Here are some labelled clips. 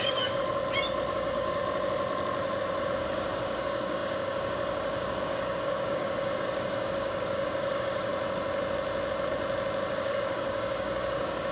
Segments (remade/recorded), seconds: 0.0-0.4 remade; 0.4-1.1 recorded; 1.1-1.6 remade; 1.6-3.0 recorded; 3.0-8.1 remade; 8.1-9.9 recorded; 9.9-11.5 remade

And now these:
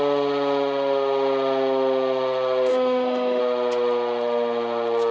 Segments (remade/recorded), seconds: 0.0-2.7 recorded; 2.7-3.4 remade; 3.4-5.1 recorded

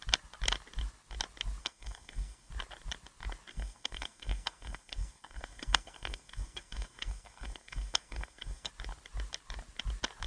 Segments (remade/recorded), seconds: 0.0-1.6 recorded; 1.6-2.5 remade; 2.5-3.5 recorded; 3.5-8.7 remade; 8.7-10.3 recorded

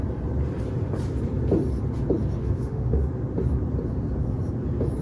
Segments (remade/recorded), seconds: 0.0-2.4 recorded; 2.4-3.1 remade; 3.1-5.0 recorded